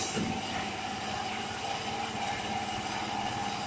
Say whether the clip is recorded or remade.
recorded